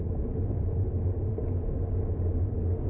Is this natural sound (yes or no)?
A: yes